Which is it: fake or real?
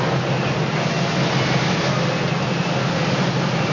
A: real